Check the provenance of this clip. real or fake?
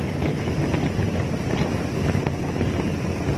real